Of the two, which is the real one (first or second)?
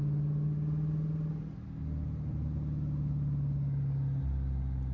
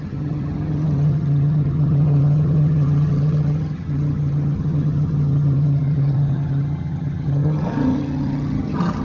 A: first